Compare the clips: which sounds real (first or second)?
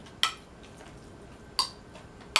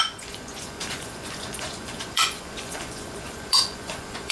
first